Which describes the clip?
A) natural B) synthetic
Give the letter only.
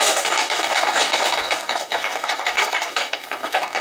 B